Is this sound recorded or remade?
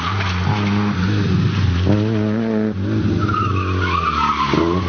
recorded